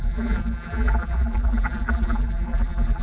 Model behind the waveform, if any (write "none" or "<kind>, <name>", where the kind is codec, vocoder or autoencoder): vocoder, BigVGAN v2